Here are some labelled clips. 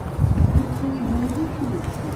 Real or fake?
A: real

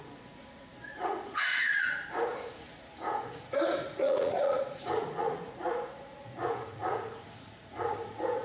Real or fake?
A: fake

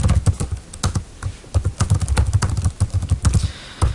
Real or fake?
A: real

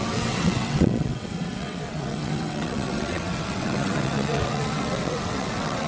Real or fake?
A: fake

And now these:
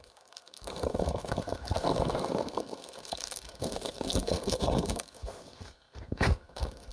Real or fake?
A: fake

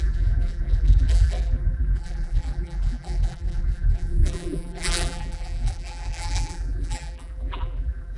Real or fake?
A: fake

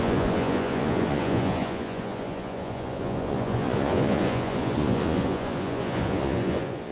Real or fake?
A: fake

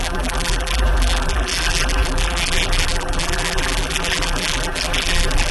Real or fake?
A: fake